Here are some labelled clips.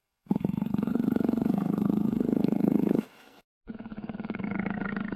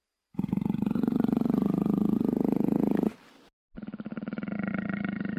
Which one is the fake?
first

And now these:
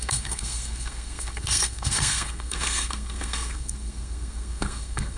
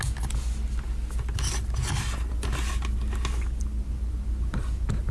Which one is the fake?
first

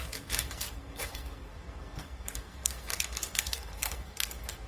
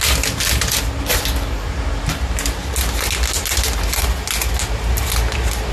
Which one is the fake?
first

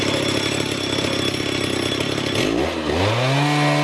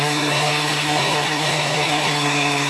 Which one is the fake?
second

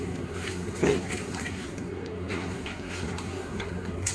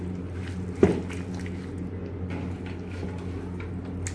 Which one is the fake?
first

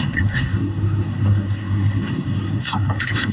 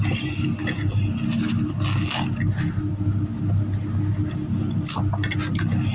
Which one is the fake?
first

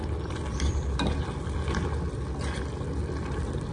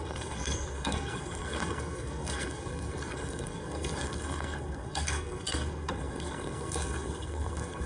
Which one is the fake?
second